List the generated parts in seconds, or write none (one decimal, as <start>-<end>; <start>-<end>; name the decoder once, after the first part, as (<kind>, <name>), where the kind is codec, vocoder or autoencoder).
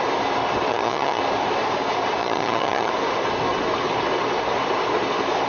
0.7-1.2 (vocoder, HiFi-GAN); 2.2-2.9